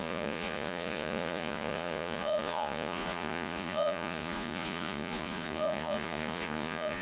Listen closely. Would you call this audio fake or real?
fake